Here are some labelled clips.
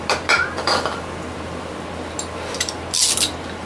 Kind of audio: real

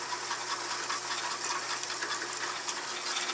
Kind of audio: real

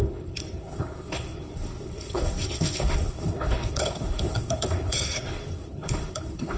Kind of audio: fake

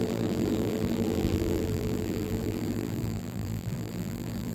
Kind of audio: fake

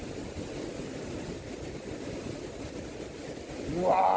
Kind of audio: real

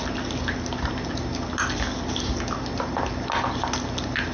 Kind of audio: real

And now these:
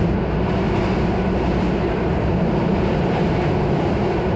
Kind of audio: fake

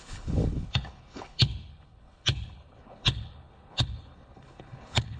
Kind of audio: fake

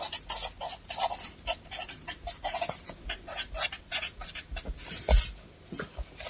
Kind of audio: real